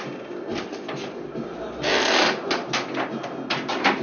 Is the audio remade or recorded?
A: recorded